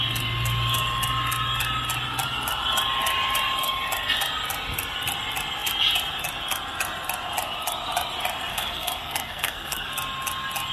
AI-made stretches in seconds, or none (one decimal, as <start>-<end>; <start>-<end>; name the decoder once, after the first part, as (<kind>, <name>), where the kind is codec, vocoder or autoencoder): 8.5-9.9 (codec, SNAC)